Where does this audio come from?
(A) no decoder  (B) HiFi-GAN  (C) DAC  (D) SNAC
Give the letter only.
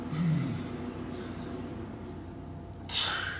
A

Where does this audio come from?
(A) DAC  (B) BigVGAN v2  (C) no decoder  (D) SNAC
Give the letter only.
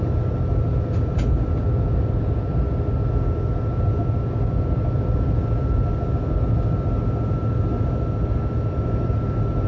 C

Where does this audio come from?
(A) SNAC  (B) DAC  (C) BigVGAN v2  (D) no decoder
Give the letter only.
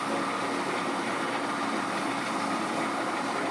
D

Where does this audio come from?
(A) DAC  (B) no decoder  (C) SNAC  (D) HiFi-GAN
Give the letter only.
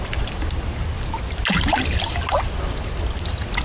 B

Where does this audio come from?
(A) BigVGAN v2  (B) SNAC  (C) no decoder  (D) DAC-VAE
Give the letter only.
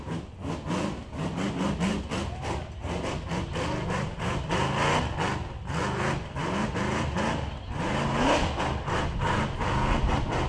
C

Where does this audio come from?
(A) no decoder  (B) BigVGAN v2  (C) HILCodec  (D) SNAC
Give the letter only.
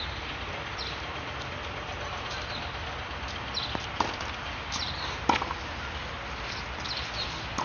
A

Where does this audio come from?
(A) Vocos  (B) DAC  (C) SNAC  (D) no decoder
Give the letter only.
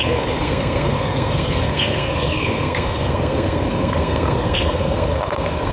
C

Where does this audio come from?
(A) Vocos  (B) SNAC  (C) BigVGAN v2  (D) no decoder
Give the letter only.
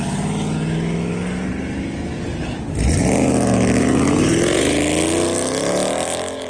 D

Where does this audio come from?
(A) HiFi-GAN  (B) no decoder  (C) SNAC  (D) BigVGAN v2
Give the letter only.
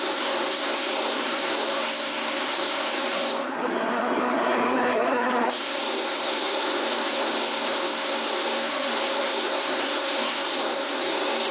C